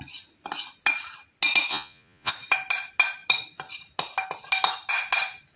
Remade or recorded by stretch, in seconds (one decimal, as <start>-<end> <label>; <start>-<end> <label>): 0.0-1.7 recorded; 1.7-2.3 remade; 2.3-5.6 recorded